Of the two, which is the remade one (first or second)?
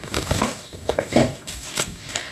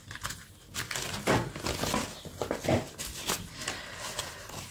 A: first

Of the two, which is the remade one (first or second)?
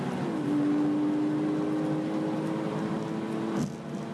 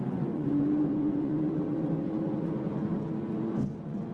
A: second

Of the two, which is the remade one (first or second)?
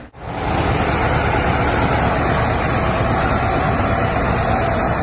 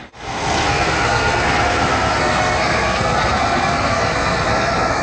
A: second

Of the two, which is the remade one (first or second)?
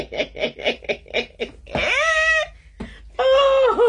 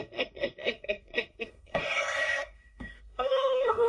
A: second